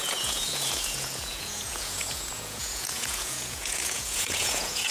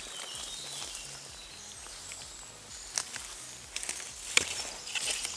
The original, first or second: second